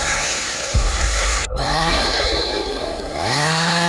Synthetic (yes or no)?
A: yes